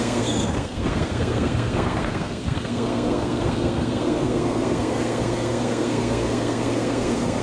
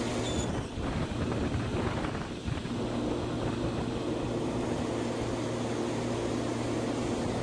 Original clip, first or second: second